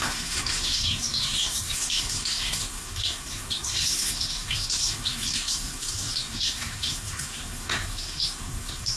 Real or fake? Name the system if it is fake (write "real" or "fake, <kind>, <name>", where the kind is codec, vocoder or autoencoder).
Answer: fake, codec, SNAC